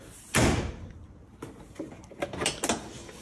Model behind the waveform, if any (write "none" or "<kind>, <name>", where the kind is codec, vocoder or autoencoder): none